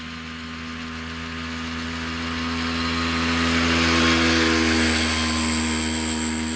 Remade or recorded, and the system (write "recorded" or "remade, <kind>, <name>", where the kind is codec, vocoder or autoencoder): recorded